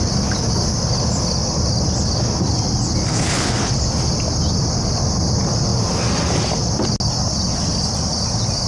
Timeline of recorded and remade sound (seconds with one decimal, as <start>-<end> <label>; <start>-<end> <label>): 0.0-3.1 recorded; 3.1-3.7 remade; 3.7-8.7 recorded